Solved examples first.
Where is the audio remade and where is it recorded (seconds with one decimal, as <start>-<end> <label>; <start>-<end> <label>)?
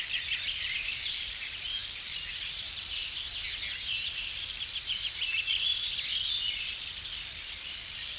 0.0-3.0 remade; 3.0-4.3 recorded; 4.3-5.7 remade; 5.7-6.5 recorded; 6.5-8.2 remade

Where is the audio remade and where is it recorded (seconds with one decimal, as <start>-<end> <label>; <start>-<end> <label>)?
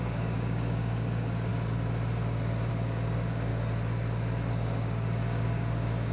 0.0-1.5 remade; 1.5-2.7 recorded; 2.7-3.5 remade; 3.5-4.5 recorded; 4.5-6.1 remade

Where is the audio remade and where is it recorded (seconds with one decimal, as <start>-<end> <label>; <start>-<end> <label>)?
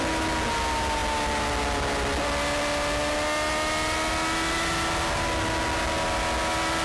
0.0-6.8 recorded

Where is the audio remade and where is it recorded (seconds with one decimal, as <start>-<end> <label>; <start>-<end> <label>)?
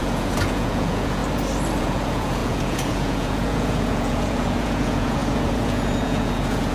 0.0-1.2 remade; 1.2-1.8 recorded; 1.8-6.7 remade